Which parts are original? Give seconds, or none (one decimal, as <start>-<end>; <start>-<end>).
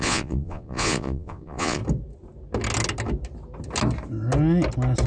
1.8-5.1